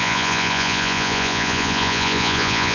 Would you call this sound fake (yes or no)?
yes